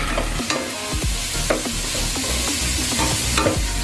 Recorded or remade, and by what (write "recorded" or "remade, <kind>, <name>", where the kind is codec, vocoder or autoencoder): recorded